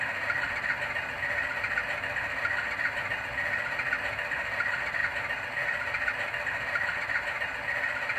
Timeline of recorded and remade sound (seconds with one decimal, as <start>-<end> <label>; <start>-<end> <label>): 0.0-8.2 recorded